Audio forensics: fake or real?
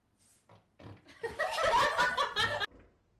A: real